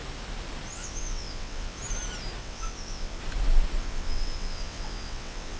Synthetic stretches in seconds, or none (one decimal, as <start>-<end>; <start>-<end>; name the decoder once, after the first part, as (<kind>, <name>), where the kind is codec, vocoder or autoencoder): 0.7-1.8 (vocoder, WaveNeXt); 2.4-3.2; 3.8-5.6